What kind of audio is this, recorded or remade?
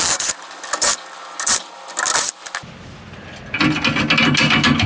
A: recorded